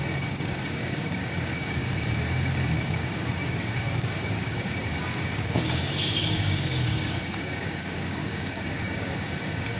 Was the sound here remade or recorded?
remade